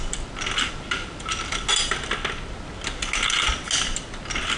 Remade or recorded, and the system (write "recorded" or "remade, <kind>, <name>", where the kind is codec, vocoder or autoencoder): recorded